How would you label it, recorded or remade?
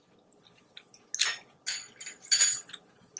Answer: recorded